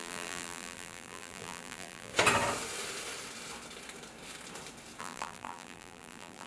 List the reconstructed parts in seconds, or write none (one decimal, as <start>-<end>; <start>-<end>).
0.0-2.1; 5.0-6.5